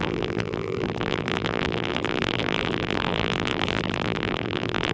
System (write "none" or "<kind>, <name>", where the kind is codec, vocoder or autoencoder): vocoder, BigVGAN v2